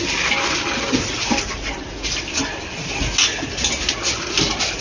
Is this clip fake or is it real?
real